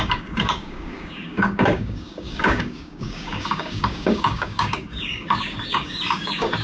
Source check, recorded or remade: remade